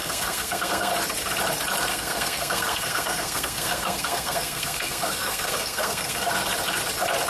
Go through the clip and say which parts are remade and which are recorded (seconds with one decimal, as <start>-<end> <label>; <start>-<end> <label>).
0.0-0.9 remade; 0.9-1.9 recorded; 1.9-6.3 remade; 6.3-7.3 recorded